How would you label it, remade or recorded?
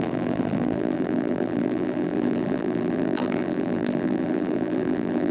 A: remade